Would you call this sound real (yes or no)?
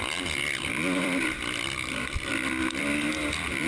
no